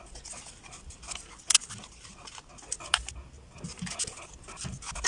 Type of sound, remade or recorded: recorded